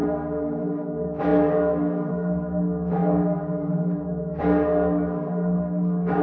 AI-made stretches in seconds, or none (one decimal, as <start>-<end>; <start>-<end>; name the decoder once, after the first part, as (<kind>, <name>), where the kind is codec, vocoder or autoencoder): 0.6-6.2 (codec, DAC)